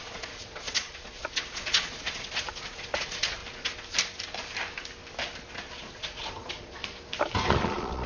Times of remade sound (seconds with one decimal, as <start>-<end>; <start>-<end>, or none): 0.0-3.4; 5.7-6.8; 7.5-8.1